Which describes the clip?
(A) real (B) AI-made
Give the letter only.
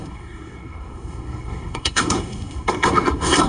B